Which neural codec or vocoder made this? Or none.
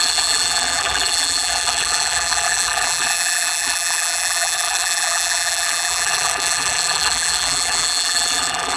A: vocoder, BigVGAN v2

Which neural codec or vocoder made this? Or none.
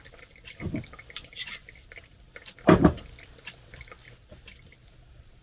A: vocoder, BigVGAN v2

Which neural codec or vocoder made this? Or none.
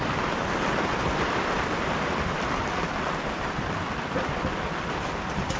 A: vocoder, BigVGAN v2